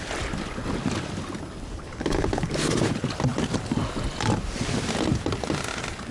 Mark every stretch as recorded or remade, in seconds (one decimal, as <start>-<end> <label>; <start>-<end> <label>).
0.0-1.7 recorded; 1.7-2.5 remade; 2.5-6.1 recorded